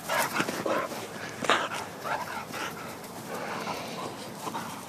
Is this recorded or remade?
recorded